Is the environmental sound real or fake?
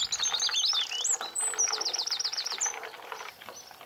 real